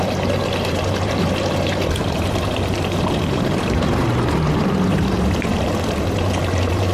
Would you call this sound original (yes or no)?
no